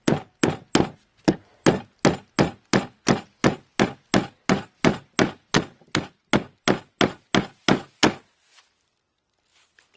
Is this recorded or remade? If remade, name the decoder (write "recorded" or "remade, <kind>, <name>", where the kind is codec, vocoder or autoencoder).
recorded